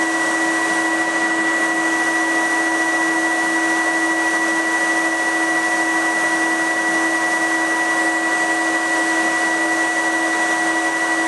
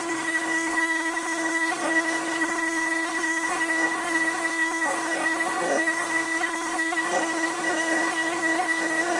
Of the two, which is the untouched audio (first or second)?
first